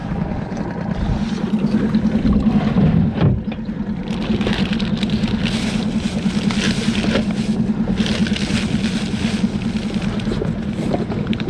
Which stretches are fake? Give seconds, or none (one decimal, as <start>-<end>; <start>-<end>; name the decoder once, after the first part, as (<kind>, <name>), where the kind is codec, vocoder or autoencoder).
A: 0.0-0.6 (codec, DAC)